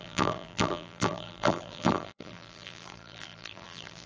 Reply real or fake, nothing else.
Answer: fake